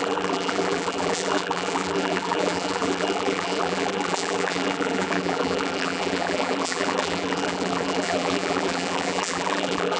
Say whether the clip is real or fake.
fake